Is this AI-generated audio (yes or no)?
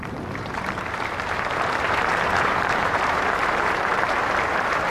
yes